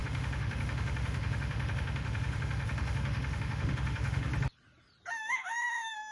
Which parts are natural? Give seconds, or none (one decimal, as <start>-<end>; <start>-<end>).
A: 4.3-5.1